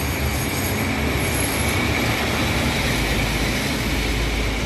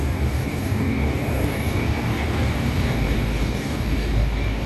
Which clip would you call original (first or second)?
first